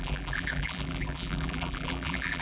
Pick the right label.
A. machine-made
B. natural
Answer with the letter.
A